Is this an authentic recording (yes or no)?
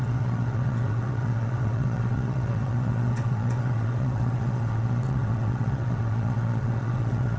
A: no